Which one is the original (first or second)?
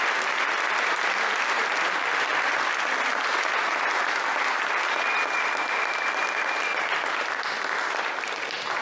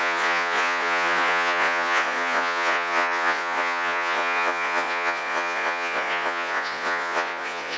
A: first